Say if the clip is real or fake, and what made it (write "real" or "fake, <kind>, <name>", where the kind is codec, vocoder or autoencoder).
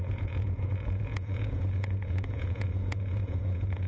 fake, vocoder, Vocos